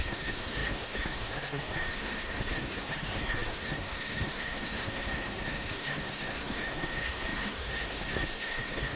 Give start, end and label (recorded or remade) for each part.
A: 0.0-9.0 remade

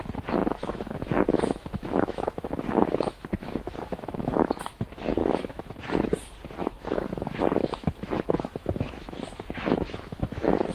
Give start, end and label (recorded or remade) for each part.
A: 0.0-0.4 recorded; 0.4-4.6 remade; 4.6-5.2 recorded; 5.2-5.8 remade; 5.8-6.6 recorded; 6.6-10.7 remade

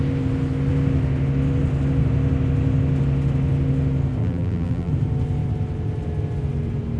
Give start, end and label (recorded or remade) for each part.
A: 0.0-4.2 recorded; 4.2-4.9 remade; 4.9-7.0 recorded